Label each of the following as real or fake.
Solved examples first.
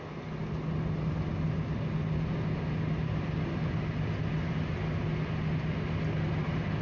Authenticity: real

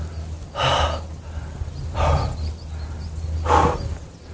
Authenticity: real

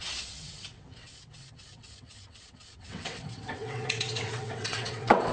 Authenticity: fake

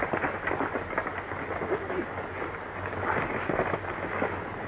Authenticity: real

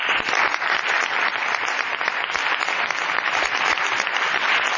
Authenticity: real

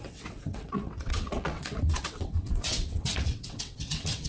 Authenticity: fake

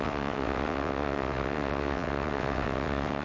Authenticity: fake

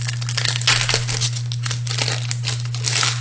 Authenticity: real